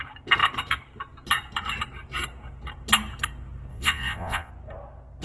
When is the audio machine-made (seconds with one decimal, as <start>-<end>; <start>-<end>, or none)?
3.7-4.5